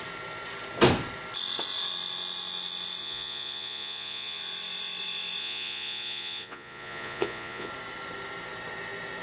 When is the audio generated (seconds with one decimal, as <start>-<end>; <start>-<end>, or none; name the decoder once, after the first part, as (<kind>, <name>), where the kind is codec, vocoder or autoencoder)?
3.0-4.4 (vocoder, Vocos); 5.4-7.7

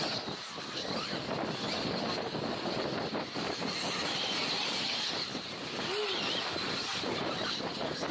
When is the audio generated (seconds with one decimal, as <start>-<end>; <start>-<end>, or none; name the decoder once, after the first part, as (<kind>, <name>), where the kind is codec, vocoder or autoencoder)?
none

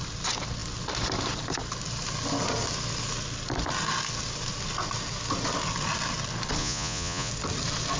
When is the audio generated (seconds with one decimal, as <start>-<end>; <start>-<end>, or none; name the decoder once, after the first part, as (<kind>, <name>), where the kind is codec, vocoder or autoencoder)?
6.6-7.3 (vocoder, Vocos)

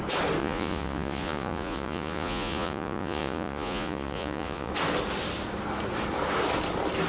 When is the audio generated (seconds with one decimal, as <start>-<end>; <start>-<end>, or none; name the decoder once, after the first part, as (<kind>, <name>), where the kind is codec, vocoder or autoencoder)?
0.4-4.7 (vocoder, Vocos)

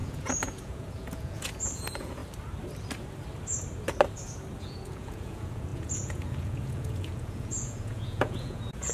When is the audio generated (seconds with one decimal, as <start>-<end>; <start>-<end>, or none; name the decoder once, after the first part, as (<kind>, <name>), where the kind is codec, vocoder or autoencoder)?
0.0-2.2 (vocoder, Vocos); 4.6-8.9

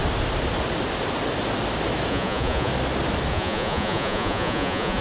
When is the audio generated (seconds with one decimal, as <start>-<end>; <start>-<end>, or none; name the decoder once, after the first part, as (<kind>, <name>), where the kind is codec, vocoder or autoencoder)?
2.1-2.7 (vocoder, Vocos); 3.3-5.0